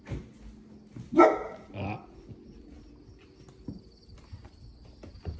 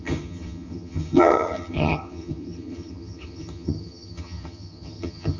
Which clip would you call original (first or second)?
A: first